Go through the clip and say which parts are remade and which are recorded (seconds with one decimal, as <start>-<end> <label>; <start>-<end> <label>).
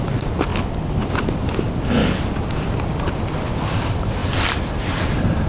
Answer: 0.0-0.5 recorded; 0.5-1.1 remade; 1.1-5.5 recorded